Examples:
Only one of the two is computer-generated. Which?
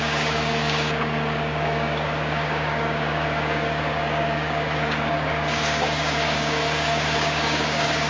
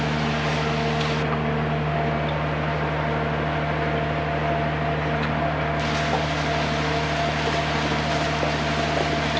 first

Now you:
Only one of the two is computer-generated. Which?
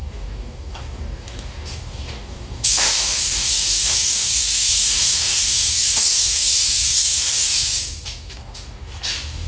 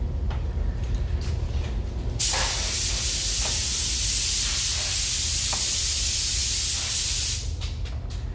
first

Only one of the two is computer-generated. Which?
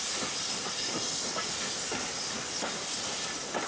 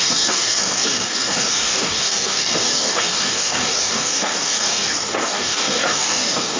second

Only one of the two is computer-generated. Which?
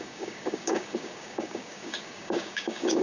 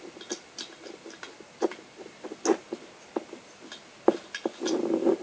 first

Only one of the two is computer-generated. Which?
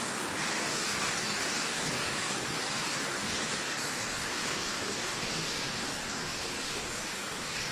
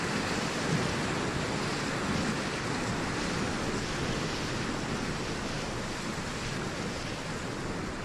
first